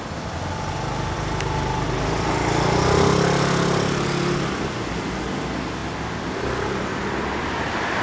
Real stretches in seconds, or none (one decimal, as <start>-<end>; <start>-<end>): 0.0-8.0